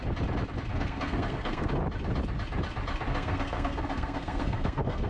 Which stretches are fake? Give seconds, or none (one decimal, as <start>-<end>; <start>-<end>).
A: 0.7-1.7; 3.1-5.1